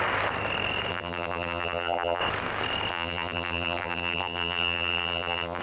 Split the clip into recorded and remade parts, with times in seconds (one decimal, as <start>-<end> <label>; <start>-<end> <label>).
0.0-0.9 recorded; 0.9-2.2 remade; 2.2-2.9 recorded; 2.9-5.6 remade